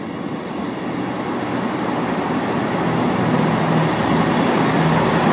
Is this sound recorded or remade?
recorded